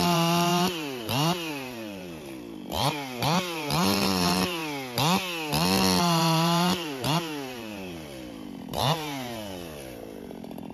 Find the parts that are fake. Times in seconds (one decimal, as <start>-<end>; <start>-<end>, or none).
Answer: 0.0-4.6; 6.0-10.7